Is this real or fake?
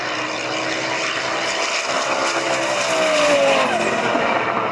real